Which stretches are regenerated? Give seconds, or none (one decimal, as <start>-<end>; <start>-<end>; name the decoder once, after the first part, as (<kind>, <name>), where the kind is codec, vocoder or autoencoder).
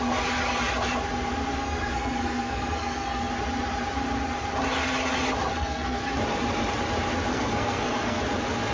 1.5-3.3 (codec, SNAC); 5.5-6.0; 7.3-8.2